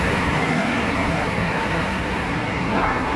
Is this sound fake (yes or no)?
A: yes